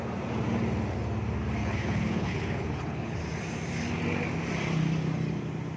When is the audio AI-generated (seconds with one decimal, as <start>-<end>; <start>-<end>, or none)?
1.6-3.2